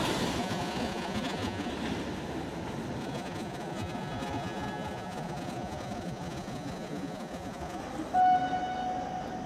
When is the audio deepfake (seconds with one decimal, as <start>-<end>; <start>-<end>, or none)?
0.4-1.7; 3.0-7.8